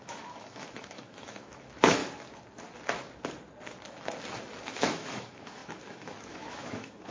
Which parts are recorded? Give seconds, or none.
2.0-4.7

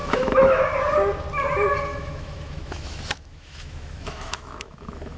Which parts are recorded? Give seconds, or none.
0.6-1.9

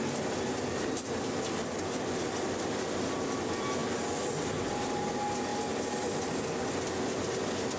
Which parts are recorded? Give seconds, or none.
0.0-7.8

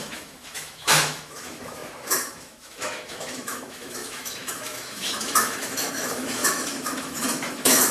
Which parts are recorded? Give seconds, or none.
none

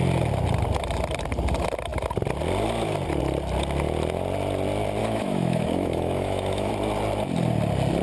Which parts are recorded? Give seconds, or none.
0.0-5.0; 6.7-8.0

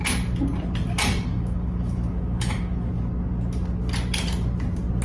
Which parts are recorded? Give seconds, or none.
0.0-1.3; 2.9-5.0

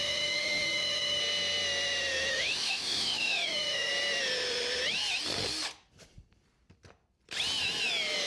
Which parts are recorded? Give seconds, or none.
1.2-2.3; 3.9-8.3

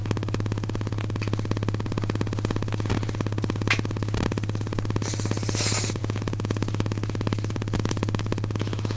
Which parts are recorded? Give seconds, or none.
0.9-6.0